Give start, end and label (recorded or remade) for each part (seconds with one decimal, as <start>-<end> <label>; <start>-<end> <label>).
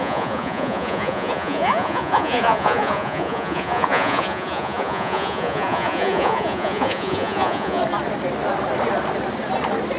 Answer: 0.0-7.8 remade; 7.8-10.0 recorded